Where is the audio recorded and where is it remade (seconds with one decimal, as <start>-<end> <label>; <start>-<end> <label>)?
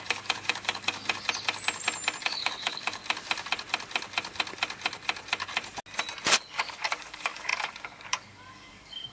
0.0-1.0 remade; 1.0-2.2 recorded; 2.2-3.0 remade; 3.0-6.3 recorded; 6.3-9.1 remade